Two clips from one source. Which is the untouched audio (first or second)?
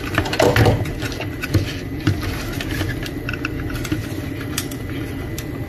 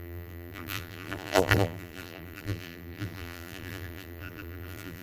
first